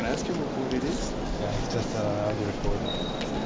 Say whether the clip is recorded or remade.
recorded